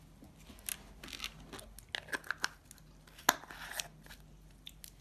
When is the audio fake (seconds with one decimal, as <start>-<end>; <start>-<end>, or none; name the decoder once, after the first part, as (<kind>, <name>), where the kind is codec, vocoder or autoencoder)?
none